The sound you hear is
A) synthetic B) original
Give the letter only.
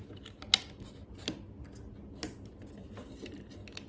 B